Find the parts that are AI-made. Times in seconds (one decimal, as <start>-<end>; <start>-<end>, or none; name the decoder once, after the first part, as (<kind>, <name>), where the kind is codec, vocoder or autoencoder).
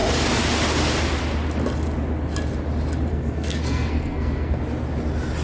3.1-4.6 (codec, SNAC)